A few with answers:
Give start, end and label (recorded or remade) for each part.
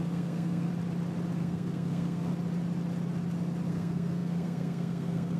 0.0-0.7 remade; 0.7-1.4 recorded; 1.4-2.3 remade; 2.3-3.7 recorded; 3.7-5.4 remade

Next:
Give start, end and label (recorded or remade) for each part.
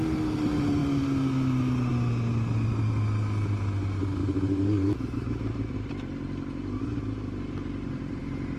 0.0-4.2 recorded; 4.2-8.2 remade; 8.2-8.6 recorded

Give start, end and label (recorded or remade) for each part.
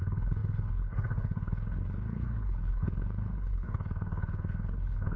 0.0-5.2 remade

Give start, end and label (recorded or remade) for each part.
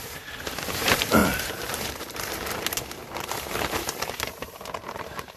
0.0-5.4 remade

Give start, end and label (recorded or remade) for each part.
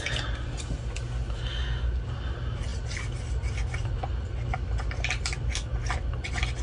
0.0-6.6 recorded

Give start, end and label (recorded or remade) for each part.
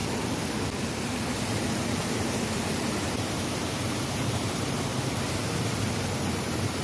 0.0-1.0 recorded; 1.0-4.9 remade; 4.9-5.9 recorded; 5.9-6.8 remade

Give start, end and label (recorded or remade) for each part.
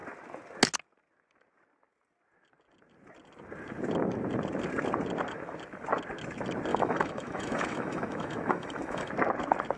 0.0-6.7 recorded; 6.7-9.1 remade; 9.1-9.8 recorded